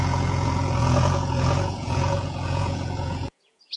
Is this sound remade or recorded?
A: remade